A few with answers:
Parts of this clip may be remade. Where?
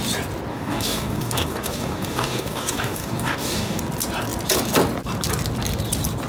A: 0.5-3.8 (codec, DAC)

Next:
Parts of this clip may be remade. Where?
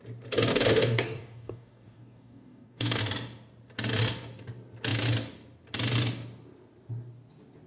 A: 0.5-3.0 (codec, DAC)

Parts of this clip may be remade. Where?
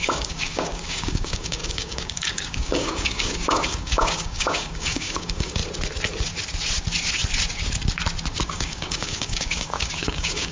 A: 0.0-5.6 (codec, DAC); 8.4-10.5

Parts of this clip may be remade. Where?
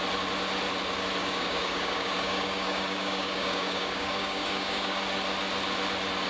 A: 1.2-5.0 (codec, DAC)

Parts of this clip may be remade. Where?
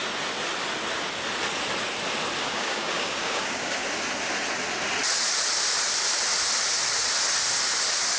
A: 2.4-3.8 (codec, DAC)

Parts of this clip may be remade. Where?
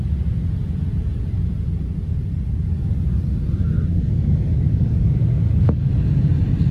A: 3.9-5.9 (codec, DAC)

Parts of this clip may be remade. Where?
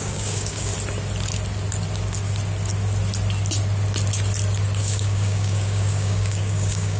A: 0.0-0.7 (codec, DAC); 4.8-7.0